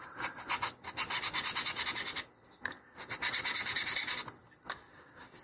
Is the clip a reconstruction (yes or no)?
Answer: no